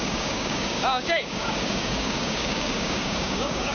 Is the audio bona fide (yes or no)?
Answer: no